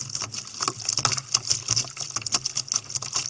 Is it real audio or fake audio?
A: real